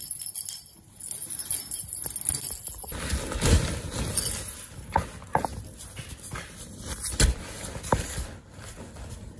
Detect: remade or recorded recorded